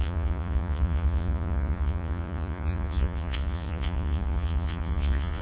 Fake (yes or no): yes